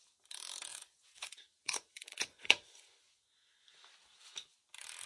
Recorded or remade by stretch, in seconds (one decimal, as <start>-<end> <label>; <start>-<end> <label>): 0.0-0.7 recorded; 0.7-3.8 remade; 3.8-5.1 recorded